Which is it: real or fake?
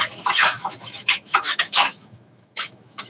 fake